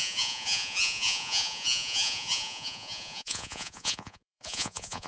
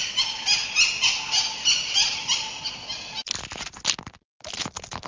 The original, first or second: second